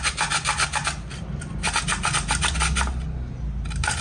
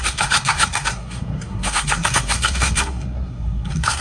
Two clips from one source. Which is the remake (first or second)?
second